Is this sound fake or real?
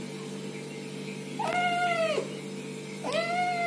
real